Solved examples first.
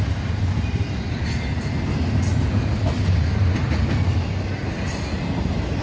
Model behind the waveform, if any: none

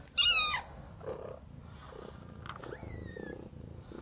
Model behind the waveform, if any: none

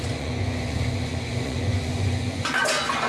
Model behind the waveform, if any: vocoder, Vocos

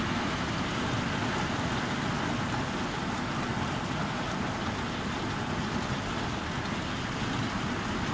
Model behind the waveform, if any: none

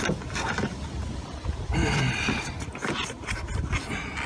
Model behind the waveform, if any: vocoder, BigVGAN v2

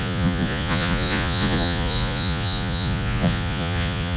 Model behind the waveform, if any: vocoder, Vocos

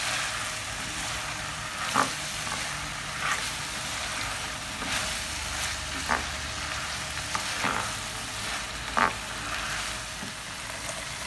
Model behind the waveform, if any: none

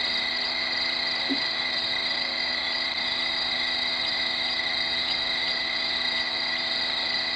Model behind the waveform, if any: none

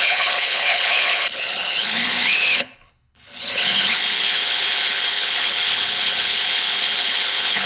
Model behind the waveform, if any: codec, HILCodec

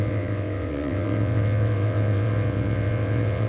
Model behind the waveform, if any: vocoder, WaveNeXt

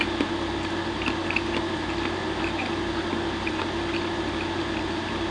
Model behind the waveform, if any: none